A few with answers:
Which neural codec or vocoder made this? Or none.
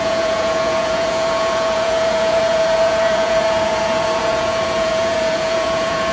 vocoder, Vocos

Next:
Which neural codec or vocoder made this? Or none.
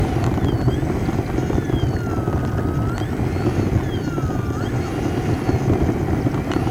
none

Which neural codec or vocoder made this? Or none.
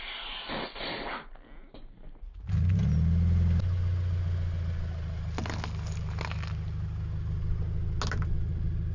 none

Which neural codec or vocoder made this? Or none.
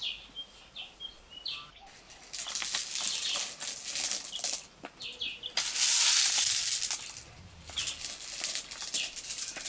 none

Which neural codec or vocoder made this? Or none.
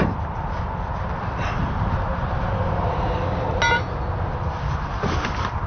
none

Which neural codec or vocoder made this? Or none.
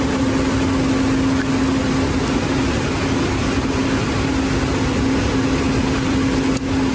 none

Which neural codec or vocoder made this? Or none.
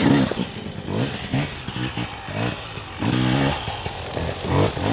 none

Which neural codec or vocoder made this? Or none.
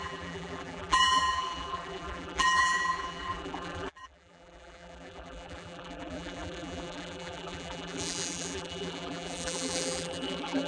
vocoder, BigVGAN v2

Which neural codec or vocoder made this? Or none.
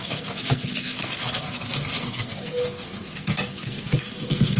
codec, SNAC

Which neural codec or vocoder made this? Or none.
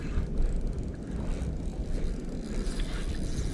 vocoder, BigVGAN v2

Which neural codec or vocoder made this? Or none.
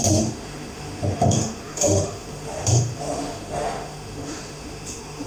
autoencoder, DAC-VAE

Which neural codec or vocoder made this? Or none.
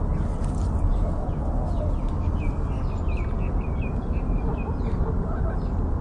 none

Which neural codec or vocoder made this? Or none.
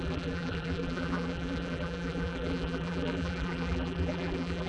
vocoder, BigVGAN v2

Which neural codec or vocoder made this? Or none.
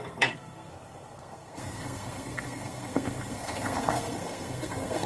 codec, SNAC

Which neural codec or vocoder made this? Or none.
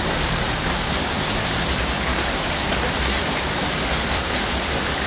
vocoder, BigVGAN v2